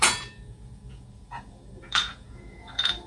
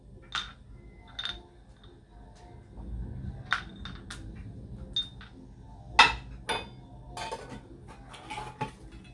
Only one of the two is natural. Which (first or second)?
second